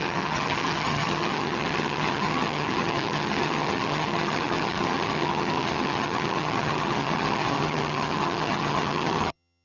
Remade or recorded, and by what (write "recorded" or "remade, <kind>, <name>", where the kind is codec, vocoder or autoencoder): remade, vocoder, HiFi-GAN